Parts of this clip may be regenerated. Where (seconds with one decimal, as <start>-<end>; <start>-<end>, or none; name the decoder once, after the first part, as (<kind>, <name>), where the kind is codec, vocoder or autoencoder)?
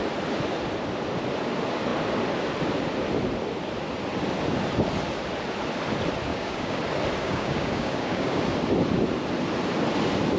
6.3-6.8 (codec, DAC); 7.2-8.4